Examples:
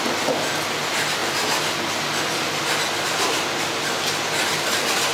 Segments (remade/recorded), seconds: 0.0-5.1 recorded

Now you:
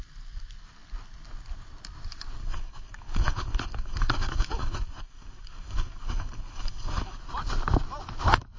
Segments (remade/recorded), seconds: 0.0-2.4 recorded; 2.4-7.2 remade; 7.2-8.6 recorded

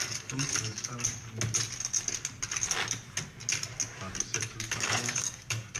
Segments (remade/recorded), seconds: 0.0-0.9 remade; 0.9-4.4 recorded; 4.4-5.8 remade

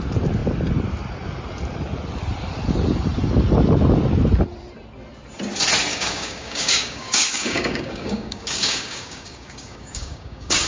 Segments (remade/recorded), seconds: 0.0-5.9 recorded; 5.9-10.7 remade

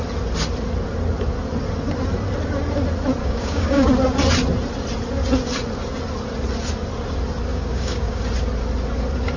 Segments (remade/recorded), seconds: 0.0-3.2 recorded; 3.2-3.9 remade; 3.9-7.5 recorded; 7.5-8.2 remade; 8.2-9.4 recorded

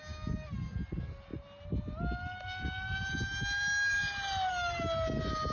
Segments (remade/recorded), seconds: 0.0-5.5 recorded

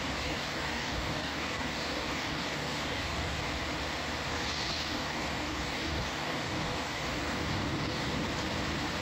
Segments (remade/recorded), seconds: 0.0-3.4 remade; 3.4-4.3 recorded; 4.3-8.1 remade; 8.1-9.0 recorded

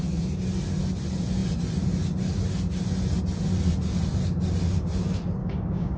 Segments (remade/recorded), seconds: 0.0-5.4 recorded; 5.4-6.0 remade